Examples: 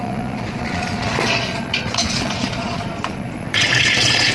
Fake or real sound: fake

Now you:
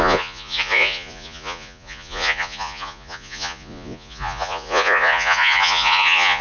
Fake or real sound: fake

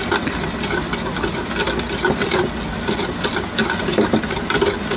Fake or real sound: real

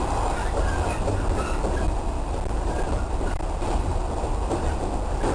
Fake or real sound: real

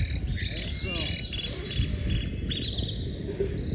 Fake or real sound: real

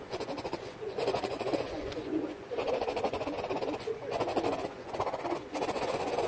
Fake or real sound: fake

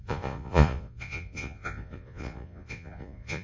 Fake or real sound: fake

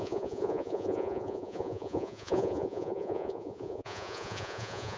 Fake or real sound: fake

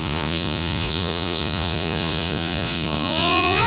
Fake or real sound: fake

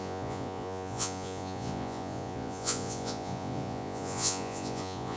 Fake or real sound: fake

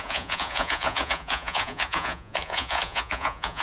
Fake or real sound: fake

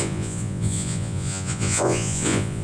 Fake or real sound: fake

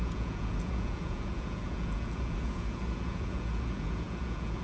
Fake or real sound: fake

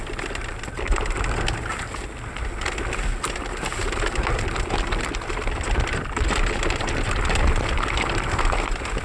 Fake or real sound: real